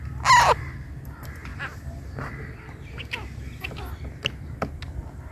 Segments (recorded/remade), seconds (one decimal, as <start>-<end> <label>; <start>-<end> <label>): 0.0-5.3 recorded